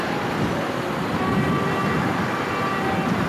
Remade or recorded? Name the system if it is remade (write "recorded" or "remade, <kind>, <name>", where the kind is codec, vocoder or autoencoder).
recorded